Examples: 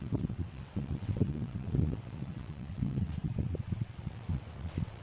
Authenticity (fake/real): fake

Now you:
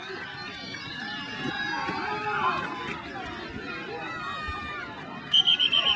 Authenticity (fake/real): real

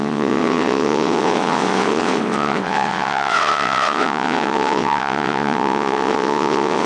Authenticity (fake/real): fake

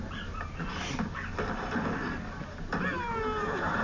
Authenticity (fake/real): real